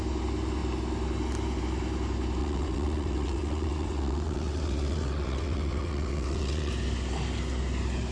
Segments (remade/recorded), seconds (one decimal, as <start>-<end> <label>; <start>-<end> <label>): 0.0-2.4 recorded; 2.4-6.7 remade; 6.7-8.1 recorded